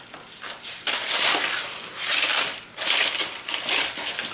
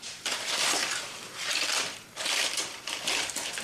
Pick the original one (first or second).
first